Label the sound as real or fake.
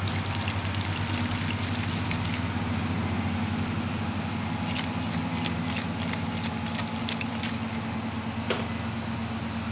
real